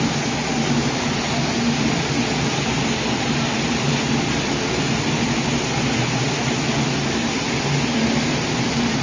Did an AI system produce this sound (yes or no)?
no